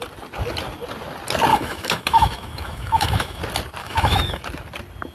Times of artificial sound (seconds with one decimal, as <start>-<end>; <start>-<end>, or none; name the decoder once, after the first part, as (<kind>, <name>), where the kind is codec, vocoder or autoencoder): 1.5-3.4 (autoencoder, DAC-VAE); 3.8-4.4